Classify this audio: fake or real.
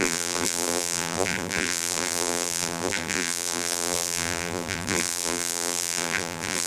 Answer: fake